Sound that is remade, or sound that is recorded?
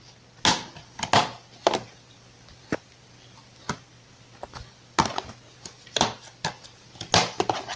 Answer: recorded